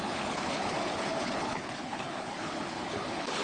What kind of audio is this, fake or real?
fake